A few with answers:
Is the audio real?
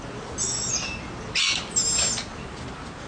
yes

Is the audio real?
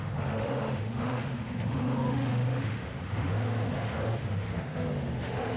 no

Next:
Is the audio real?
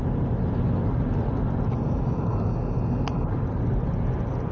yes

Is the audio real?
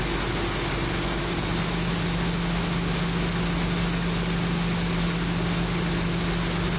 yes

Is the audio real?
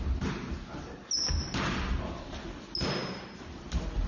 yes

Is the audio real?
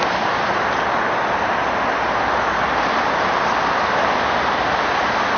yes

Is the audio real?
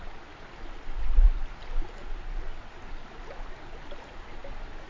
yes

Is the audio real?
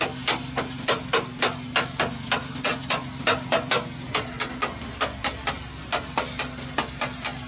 yes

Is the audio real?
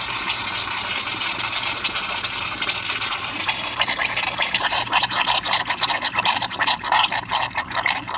no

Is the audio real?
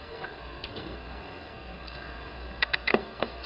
no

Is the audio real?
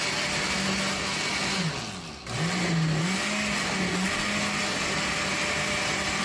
yes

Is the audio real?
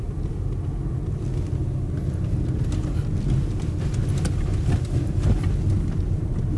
yes